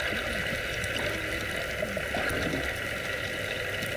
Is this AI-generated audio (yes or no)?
no